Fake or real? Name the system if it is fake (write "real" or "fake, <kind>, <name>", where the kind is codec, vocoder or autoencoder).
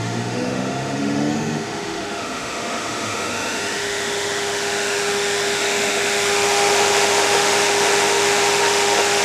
fake, autoencoder, DAC-VAE